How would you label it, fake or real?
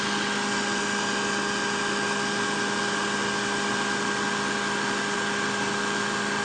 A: real